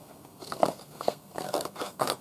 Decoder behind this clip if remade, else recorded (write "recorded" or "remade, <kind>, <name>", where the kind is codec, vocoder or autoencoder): remade, codec, SNAC